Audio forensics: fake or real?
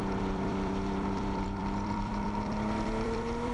fake